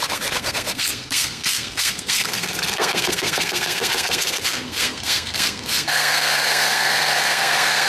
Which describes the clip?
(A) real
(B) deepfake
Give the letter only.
B